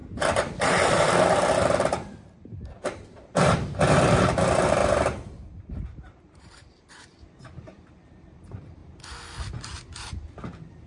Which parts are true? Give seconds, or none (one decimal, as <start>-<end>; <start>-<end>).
8.8-10.1